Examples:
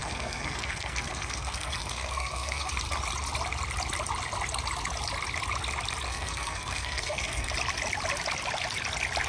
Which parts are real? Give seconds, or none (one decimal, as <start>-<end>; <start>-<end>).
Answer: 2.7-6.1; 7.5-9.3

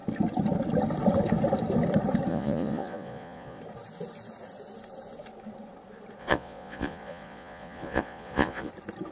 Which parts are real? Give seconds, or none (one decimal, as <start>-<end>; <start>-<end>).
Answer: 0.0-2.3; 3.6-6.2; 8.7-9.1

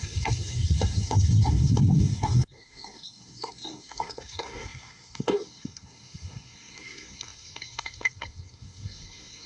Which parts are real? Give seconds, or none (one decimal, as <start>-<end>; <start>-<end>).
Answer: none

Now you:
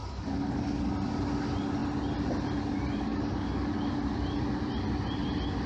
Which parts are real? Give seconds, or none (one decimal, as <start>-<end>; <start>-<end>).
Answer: 0.8-3.1; 3.7-5.7

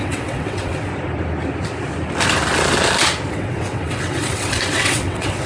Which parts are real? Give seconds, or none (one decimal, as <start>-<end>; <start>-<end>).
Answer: 0.9-3.3

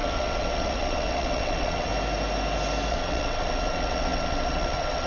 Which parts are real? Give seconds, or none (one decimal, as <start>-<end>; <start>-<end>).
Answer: 1.9-2.9